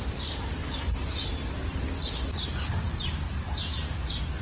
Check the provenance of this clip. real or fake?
real